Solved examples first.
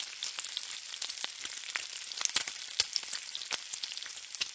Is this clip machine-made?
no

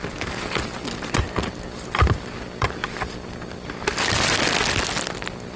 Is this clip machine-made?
no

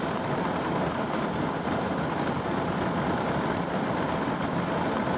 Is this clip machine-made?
no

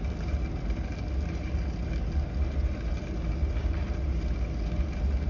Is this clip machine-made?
no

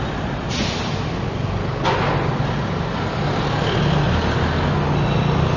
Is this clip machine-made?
no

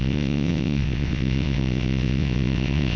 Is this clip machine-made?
yes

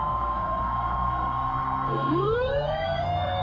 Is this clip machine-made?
yes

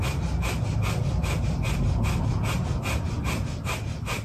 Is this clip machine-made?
no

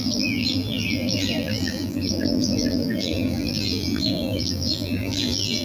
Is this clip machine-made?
yes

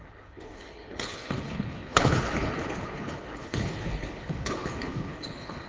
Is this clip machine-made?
yes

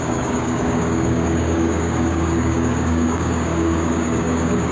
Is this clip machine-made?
yes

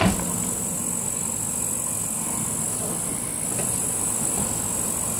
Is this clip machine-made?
no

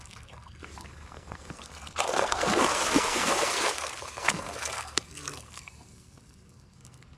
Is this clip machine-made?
yes